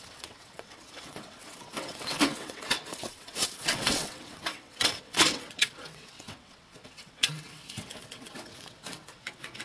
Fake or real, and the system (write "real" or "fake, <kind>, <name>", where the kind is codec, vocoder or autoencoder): fake, vocoder, WaveNeXt